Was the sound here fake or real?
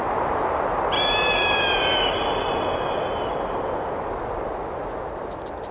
real